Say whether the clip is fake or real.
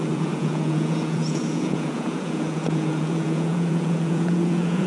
fake